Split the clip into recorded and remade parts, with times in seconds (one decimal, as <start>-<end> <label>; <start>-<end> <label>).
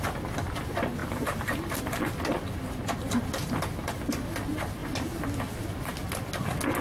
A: 0.0-6.8 recorded